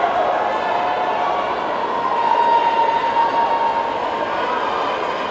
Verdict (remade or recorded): recorded